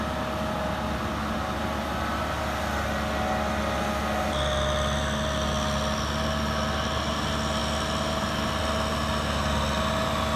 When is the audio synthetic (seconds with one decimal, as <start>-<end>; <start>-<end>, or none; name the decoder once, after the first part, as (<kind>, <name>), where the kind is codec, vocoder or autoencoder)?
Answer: none